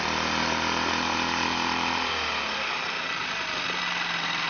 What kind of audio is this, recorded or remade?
recorded